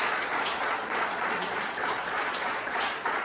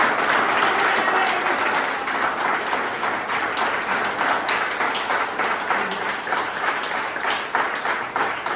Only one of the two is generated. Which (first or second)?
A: first